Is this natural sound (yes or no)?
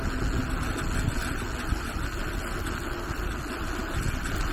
yes